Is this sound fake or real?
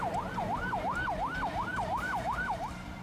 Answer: fake